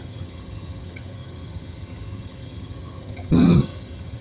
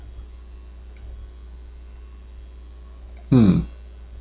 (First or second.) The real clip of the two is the second